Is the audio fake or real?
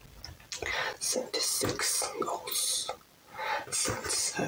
real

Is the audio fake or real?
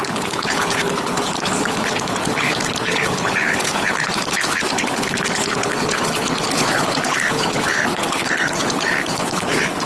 fake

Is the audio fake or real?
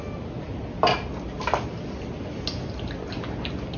real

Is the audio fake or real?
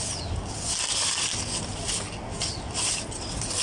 real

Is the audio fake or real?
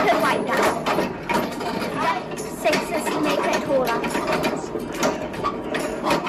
real